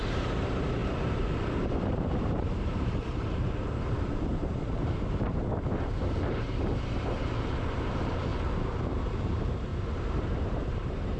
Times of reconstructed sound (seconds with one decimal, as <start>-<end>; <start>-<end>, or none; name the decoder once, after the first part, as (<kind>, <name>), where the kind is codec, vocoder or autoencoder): 0.0-8.3 (vocoder, BigVGAN v2); 9.2-9.7; 10.3-11.2